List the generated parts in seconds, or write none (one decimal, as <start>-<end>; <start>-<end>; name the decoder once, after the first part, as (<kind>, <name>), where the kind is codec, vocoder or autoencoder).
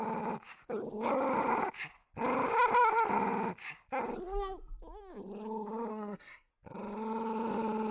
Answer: 5.9-6.5 (codec, SNAC)